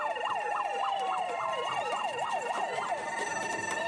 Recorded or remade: recorded